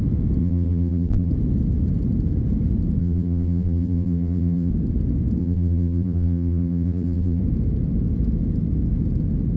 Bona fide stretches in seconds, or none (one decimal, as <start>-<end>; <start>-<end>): 0.0-0.4; 1.3-3.0; 4.7-5.4; 7.4-9.6